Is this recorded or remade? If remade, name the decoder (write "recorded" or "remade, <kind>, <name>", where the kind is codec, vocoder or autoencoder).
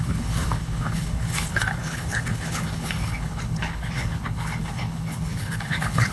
remade, codec, HILCodec